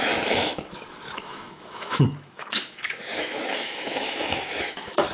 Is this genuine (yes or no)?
no